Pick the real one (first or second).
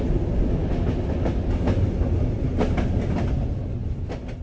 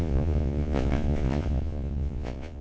first